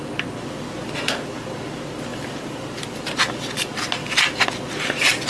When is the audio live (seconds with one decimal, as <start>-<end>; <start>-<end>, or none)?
0.0-2.1; 3.1-4.0; 4.5-5.3